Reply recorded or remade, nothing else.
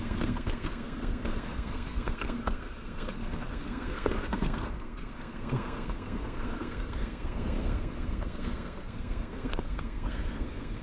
remade